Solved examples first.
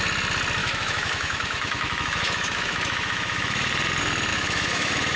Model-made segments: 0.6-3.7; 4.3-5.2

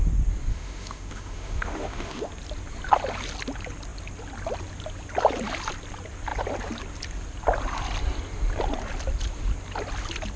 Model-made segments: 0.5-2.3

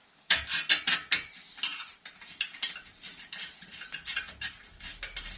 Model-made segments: none